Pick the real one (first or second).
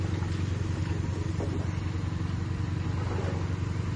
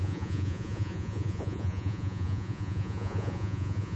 first